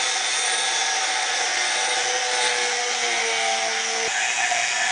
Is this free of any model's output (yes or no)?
yes